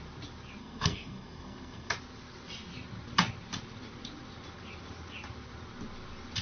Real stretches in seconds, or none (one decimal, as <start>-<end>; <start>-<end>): 0.0-0.6; 1.9-6.4